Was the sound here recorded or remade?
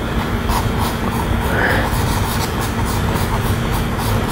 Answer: recorded